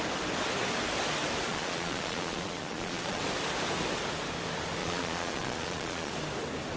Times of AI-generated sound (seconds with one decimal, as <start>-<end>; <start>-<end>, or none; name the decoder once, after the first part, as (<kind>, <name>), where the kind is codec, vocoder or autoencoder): 1.5-3.2 (vocoder, Vocos); 4.8-6.1